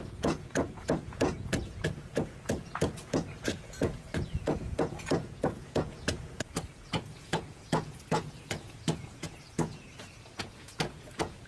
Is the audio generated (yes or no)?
yes